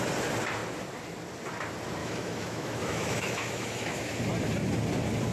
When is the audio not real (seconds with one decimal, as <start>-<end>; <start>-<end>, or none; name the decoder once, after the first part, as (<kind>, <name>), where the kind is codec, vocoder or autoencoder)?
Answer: 2.0-4.2 (autoencoder, DAC-VAE)